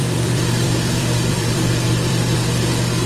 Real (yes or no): no